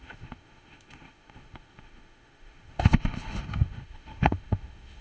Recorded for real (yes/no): no